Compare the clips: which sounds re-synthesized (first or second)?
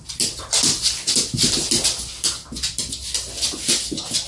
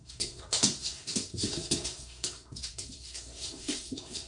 second